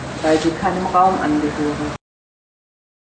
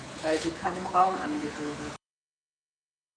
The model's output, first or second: second